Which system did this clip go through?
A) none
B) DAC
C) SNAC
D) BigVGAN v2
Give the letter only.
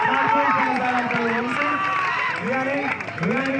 A